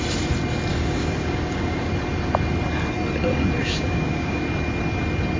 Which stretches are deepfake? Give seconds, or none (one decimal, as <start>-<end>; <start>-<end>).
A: 0.7-1.9; 3.6-4.4